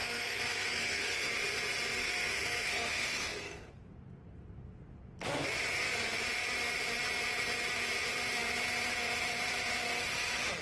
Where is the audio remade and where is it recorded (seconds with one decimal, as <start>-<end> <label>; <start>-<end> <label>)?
0.0-1.3 remade; 1.3-2.0 recorded; 2.0-3.7 remade; 3.7-10.6 recorded